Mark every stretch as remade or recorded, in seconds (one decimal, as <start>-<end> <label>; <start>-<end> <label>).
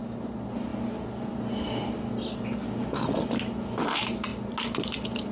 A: 0.0-5.3 recorded